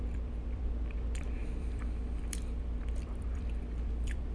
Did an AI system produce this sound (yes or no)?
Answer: yes